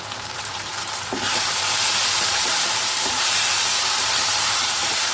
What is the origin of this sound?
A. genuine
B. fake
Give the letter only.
B